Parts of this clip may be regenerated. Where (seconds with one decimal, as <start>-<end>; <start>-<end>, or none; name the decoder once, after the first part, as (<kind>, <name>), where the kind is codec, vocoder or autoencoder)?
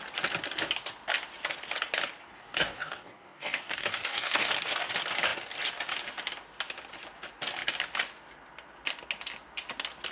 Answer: 2.2-4.5 (codec, DAC)